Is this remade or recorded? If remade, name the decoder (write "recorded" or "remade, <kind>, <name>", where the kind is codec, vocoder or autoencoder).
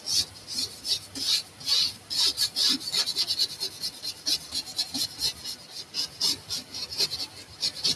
recorded